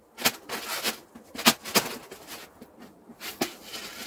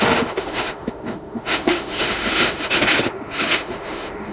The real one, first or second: first